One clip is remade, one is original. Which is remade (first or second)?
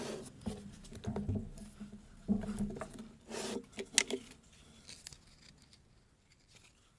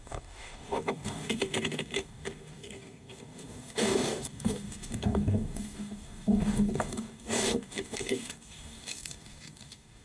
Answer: second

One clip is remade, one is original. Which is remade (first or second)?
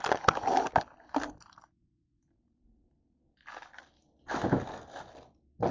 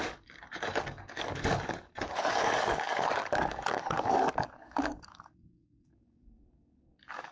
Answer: second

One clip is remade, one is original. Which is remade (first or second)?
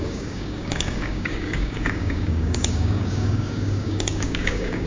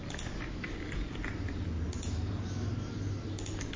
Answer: first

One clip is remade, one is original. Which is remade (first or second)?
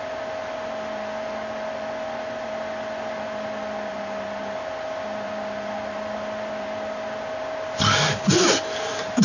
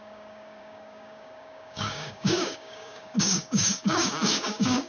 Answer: second